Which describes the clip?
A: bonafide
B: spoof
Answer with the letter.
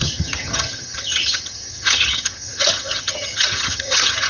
B